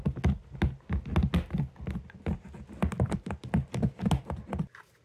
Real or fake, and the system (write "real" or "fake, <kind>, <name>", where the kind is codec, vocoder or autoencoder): real